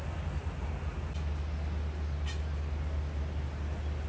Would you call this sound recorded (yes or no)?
yes